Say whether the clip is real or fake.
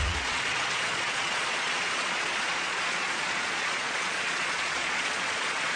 fake